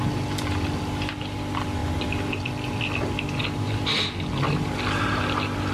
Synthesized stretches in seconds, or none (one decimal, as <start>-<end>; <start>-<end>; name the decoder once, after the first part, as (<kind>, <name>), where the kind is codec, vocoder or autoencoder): none